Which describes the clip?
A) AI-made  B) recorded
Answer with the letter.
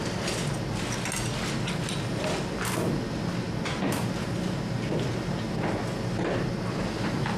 B